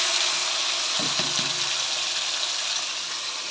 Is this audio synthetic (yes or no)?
no